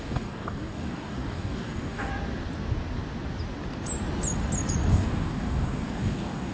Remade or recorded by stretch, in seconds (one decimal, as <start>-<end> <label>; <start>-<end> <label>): 0.0-2.1 remade; 2.1-4.9 recorded; 4.9-6.5 remade